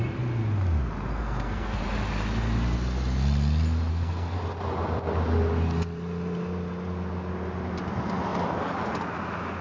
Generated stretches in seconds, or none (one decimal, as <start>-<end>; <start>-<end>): 1.1-1.8; 3.9-4.4